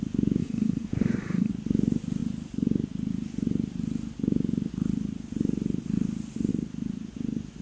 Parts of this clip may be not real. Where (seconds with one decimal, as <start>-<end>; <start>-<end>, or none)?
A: 0.4-1.5